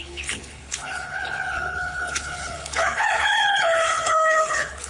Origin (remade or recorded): remade